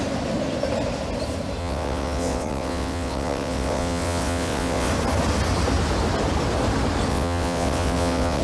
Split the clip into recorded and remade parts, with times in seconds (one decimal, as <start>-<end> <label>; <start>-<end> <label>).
0.0-1.6 recorded; 1.6-4.9 remade; 4.9-7.1 recorded; 7.1-8.4 remade